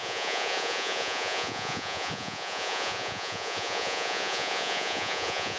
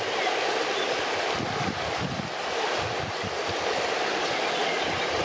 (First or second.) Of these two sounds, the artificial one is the first